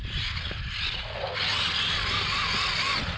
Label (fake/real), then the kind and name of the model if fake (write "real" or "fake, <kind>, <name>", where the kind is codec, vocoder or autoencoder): real